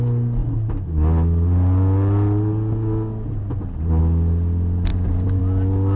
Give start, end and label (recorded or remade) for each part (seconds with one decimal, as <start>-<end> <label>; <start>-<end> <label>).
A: 0.0-4.9 recorded; 4.9-5.4 remade; 5.4-6.0 recorded